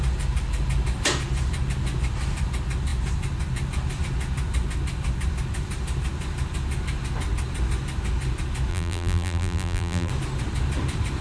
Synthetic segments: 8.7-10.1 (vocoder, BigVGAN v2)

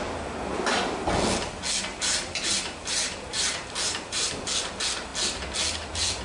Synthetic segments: 1.9-4.4 (vocoder, BigVGAN v2)

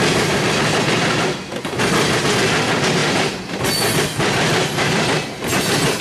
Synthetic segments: 3.0-3.6 (vocoder, BigVGAN v2)

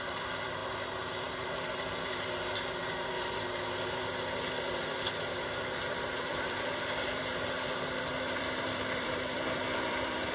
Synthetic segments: 0.0-0.6 (vocoder, BigVGAN v2); 4.7-7.3; 8.0-10.3